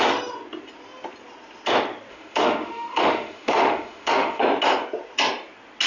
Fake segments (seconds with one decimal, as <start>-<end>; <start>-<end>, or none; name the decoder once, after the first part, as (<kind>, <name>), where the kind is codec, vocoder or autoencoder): 2.1-4.4 (autoencoder, DAC-VAE)